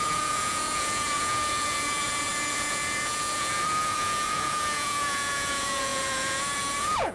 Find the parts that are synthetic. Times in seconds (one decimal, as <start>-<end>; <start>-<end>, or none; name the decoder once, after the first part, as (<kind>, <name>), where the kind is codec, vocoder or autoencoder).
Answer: 0.0-7.1 (vocoder, Vocos)